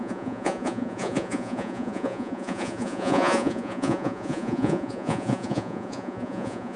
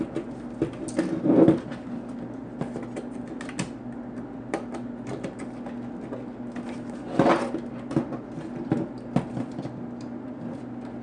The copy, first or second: first